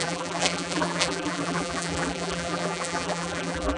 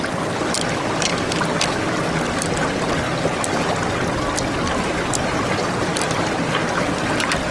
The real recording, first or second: second